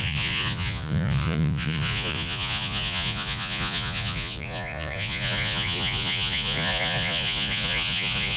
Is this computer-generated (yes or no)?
yes